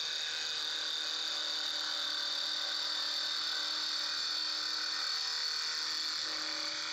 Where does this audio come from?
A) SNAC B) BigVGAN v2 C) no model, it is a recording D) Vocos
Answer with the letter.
C